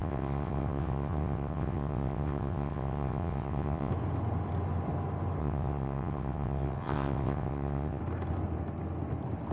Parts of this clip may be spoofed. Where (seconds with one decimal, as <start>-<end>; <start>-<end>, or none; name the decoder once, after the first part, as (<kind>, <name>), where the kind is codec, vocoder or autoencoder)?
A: 0.0-3.9 (vocoder, WaveNeXt); 5.4-8.0